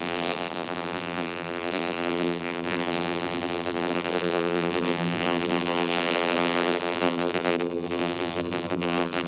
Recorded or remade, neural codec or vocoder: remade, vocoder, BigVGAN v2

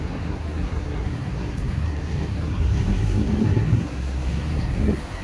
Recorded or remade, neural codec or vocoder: remade, codec, SNAC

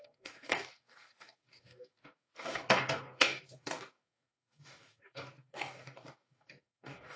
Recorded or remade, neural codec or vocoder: remade, codec, DAC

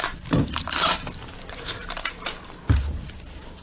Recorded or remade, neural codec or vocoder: remade, vocoder, BigVGAN v2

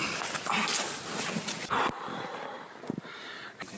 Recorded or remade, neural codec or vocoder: recorded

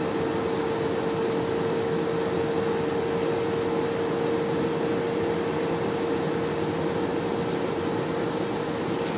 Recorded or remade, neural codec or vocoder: recorded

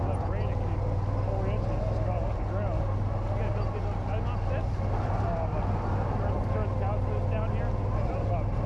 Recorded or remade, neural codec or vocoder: recorded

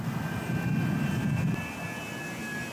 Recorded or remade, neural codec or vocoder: recorded